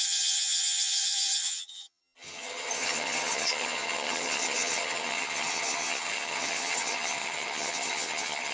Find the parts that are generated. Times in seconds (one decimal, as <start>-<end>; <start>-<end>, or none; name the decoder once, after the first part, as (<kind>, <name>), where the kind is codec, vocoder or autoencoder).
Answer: 0.0-8.5 (vocoder, HiFi-GAN)